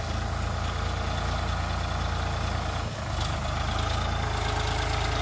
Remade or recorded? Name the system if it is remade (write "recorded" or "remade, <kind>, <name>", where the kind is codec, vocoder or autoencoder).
recorded